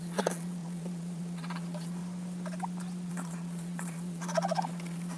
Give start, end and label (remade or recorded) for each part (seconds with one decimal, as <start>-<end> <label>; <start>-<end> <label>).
0.0-2.0 remade; 2.0-3.1 recorded; 3.1-5.2 remade